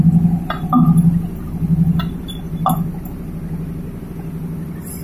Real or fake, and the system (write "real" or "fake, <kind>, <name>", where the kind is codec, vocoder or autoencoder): real